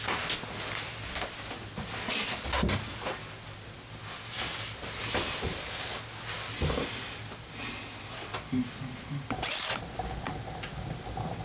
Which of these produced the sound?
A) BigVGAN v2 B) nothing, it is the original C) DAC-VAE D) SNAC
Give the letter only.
B